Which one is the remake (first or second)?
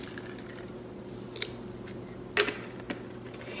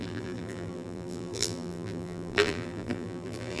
second